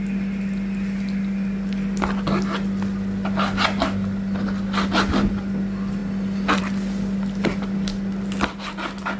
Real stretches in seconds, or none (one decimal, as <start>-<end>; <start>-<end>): 0.0-9.2